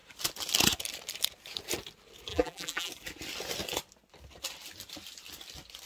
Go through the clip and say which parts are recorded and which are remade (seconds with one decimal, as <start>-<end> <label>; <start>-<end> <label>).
0.0-2.3 recorded; 2.3-2.9 remade; 2.9-5.9 recorded